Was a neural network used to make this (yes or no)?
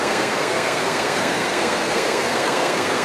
yes